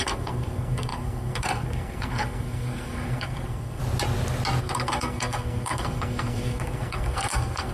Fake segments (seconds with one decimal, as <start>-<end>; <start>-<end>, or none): 0.0-3.8; 4.6-7.7